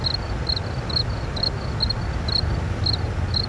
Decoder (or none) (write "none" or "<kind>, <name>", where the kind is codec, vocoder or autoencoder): none